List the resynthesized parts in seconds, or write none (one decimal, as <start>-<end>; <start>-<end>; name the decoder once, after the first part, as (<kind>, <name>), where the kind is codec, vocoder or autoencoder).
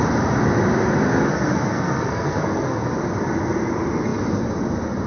1.3-2.9 (codec, SNAC)